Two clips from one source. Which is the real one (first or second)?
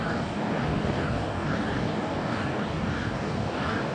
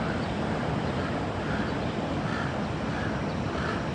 second